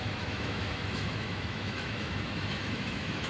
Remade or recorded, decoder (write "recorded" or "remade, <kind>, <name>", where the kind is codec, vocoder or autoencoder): remade, autoencoder, DAC-VAE